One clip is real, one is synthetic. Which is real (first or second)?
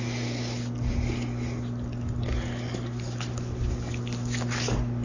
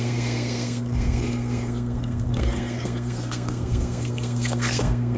first